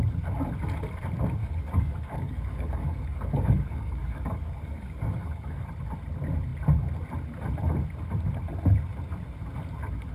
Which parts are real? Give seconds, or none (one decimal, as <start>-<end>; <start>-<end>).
0.0-1.4; 5.7-10.1